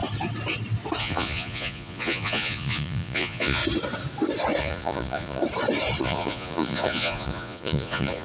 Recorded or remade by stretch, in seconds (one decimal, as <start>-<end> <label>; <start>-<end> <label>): 0.0-1.0 recorded; 1.0-3.6 remade; 3.6-4.6 recorded; 4.6-5.4 remade; 5.4-6.0 recorded; 6.0-8.2 remade